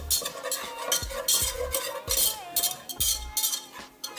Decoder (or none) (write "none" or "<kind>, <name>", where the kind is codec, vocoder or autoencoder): none